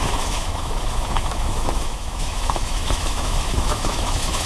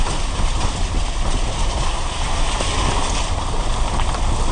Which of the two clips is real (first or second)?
second